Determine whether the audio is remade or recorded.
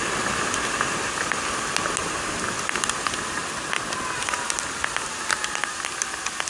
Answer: recorded